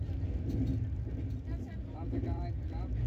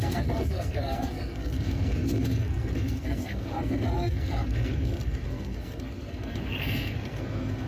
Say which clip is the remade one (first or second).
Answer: second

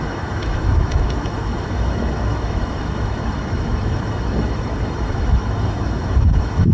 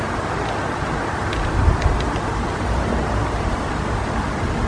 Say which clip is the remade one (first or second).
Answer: first